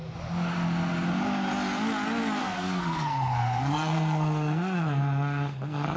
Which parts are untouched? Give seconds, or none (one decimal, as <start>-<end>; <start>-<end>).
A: 0.0-2.4